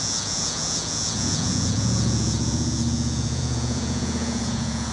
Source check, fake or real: fake